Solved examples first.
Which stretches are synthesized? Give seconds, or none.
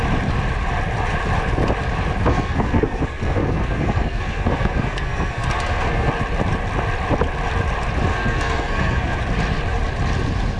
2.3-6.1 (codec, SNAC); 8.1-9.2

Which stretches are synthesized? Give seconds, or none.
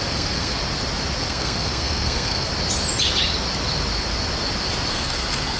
0.0-0.6 (codec, SNAC); 1.2-2.5; 4.9-5.6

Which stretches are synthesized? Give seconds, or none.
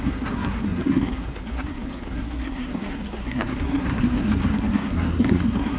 0.0-5.8 (codec, SNAC)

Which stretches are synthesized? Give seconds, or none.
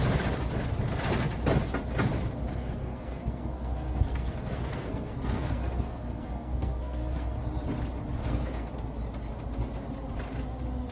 2.5-7.4 (codec, SNAC); 8.2-8.7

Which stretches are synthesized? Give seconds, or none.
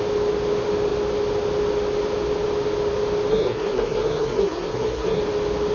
3.3-5.2 (codec, SNAC)